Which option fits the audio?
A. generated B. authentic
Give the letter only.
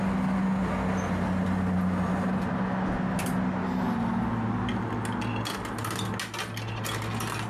B